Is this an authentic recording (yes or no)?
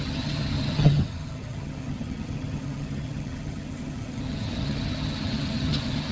no